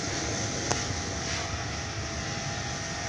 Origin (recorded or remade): recorded